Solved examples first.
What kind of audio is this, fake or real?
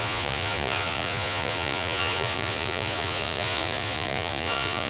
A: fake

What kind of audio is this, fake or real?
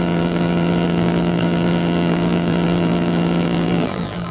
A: fake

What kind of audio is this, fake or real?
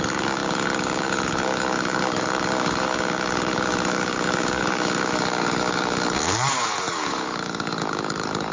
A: fake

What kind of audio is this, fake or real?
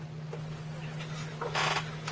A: real